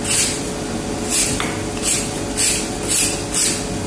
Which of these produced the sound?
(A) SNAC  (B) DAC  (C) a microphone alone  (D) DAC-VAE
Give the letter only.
C